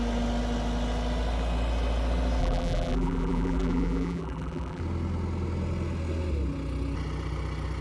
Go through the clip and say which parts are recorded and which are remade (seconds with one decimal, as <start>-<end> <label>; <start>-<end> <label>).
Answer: 0.0-2.4 recorded; 2.4-4.8 remade; 4.8-7.8 recorded